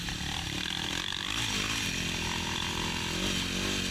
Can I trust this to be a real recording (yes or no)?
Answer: yes